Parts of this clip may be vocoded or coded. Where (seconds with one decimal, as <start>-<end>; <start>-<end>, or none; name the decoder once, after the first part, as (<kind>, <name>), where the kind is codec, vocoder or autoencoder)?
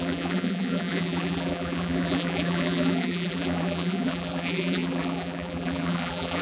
0.0-6.4 (vocoder, BigVGAN v2)